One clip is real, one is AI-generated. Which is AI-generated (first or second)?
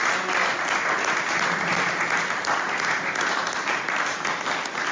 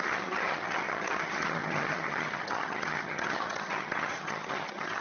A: second